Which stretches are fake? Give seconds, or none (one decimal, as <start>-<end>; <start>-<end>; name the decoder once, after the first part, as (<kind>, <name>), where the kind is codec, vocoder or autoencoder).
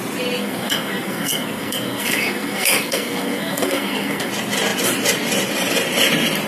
0.4-4.3 (codec, SNAC)